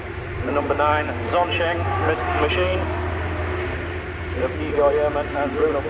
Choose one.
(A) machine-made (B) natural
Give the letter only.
B